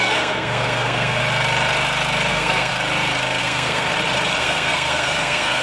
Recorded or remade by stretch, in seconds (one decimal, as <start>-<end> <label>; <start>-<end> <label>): 0.0-1.2 remade; 1.2-2.3 recorded; 2.3-2.7 remade; 2.7-3.4 recorded; 3.4-3.9 remade; 3.9-4.4 recorded; 4.4-5.6 remade